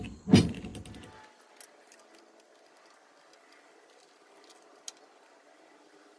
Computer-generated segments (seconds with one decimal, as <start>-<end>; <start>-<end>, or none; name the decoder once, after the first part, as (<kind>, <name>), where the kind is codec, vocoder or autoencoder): none